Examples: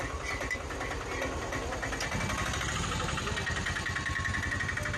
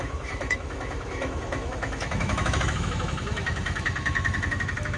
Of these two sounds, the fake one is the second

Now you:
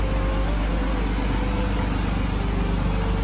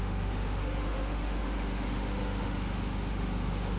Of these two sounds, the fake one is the second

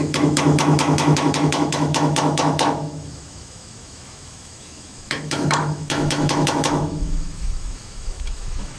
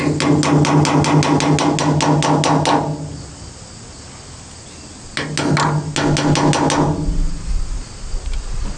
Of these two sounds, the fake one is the first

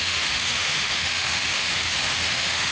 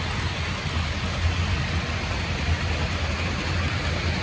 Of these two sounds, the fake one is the first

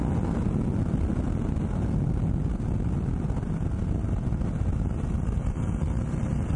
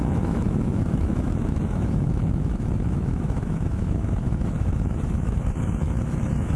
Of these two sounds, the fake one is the second